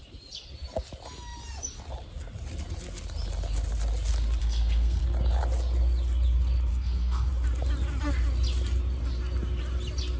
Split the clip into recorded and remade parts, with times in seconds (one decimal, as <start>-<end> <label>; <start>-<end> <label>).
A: 0.0-4.4 recorded; 4.4-5.0 remade; 5.0-6.7 recorded; 6.7-7.3 remade; 7.3-10.2 recorded